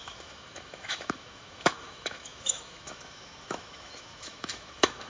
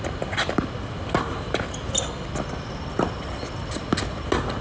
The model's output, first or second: first